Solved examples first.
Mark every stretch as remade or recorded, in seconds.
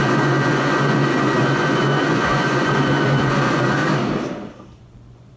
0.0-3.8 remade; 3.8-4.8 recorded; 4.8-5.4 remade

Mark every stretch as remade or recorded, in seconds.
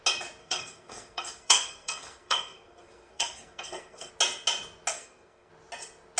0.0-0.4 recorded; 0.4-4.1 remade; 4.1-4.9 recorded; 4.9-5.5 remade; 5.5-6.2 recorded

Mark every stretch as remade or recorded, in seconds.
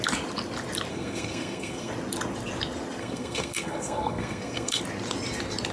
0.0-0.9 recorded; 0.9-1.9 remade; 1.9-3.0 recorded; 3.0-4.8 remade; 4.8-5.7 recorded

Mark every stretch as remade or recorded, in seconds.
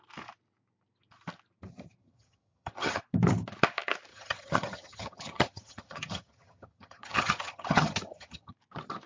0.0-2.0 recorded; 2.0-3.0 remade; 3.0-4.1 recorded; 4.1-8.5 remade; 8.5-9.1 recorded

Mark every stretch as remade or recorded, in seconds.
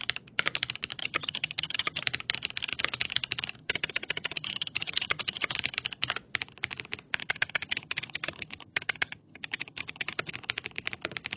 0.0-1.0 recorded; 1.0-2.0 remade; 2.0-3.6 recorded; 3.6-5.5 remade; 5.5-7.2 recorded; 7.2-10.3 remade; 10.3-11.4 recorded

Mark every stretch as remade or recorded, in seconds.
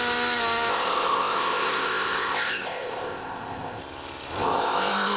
0.0-0.7 recorded; 0.7-3.8 remade; 3.8-4.4 recorded; 4.4-5.2 remade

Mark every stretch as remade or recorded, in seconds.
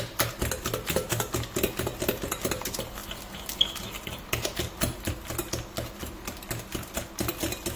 0.0-3.0 recorded; 3.0-5.1 remade; 5.1-7.8 recorded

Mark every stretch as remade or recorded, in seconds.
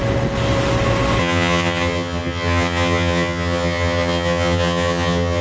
0.0-1.2 recorded; 1.2-5.4 remade